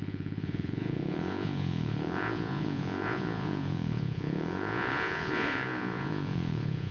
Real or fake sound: fake